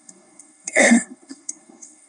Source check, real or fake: fake